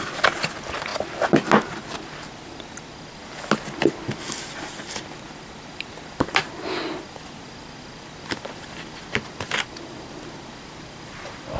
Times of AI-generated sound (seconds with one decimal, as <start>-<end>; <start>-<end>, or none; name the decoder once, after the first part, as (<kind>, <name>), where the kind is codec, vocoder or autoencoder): none